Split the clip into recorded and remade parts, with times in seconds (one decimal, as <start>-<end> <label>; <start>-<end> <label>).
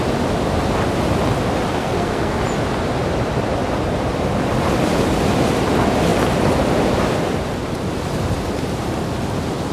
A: 0.0-1.7 recorded; 1.7-2.4 remade; 2.4-9.7 recorded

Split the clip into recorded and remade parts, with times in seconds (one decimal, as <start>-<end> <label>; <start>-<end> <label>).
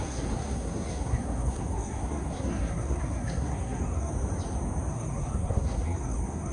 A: 0.0-4.1 remade; 4.1-4.9 recorded; 4.9-6.5 remade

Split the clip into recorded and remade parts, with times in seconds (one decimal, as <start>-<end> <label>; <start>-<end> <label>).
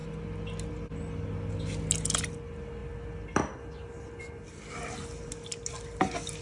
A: 0.0-6.4 recorded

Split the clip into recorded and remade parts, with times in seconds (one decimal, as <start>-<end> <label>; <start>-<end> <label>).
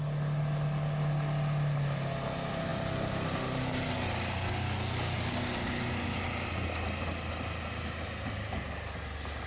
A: 0.0-9.5 recorded